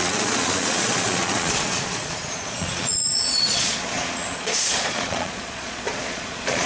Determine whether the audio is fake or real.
fake